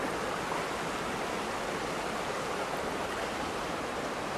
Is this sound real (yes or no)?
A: yes